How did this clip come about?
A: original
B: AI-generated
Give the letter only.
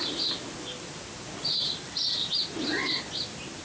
A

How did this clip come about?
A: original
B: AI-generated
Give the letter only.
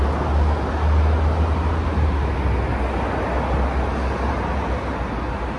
A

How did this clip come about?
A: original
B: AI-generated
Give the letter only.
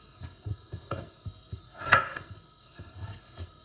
B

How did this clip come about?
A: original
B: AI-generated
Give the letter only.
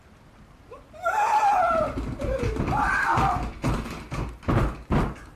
A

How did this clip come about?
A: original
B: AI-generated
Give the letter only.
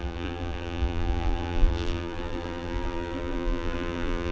B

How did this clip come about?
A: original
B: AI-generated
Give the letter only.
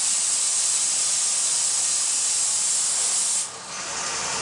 A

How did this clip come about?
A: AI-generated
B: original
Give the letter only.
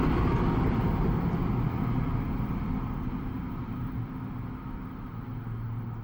B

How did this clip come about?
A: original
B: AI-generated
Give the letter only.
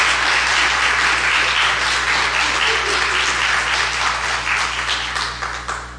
A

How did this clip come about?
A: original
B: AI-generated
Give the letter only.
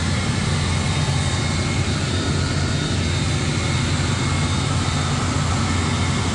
A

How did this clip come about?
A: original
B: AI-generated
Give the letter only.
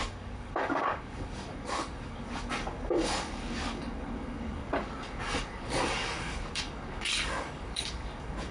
B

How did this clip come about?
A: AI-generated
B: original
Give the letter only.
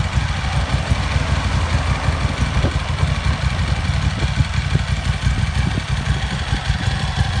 B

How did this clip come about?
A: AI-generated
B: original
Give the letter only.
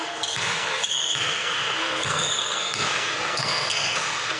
A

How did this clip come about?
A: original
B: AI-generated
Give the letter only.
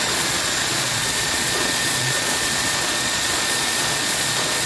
B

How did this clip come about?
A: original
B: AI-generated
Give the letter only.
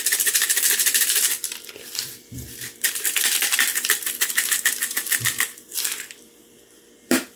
B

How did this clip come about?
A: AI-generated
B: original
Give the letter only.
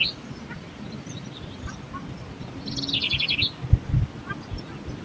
B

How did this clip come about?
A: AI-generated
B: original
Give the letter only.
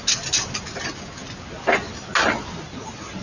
B